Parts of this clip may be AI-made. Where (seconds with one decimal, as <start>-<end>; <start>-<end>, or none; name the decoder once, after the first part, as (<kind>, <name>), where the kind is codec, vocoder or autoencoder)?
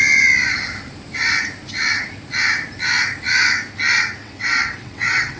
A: 4.2-5.4 (vocoder, WaveNeXt)